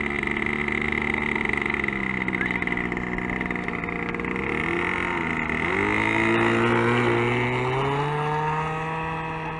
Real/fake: real